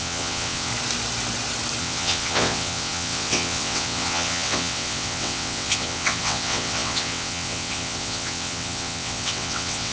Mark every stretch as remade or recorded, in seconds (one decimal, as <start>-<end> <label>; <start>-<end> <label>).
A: 0.0-0.7 remade; 0.7-1.8 recorded; 1.8-9.9 remade